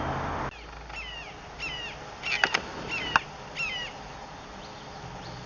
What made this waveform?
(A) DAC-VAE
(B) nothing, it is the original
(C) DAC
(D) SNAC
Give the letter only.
B